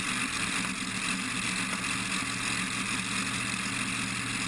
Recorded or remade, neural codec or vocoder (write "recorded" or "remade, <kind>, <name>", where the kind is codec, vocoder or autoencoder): recorded